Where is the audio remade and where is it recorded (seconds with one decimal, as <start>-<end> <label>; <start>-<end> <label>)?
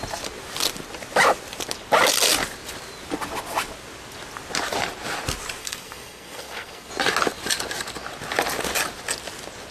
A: 0.0-5.6 recorded; 5.6-6.9 remade; 6.9-9.7 recorded